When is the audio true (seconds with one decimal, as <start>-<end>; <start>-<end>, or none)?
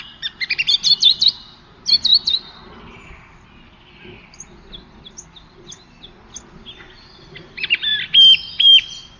0.0-9.2